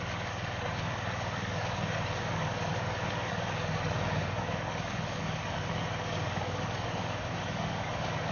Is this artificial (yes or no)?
yes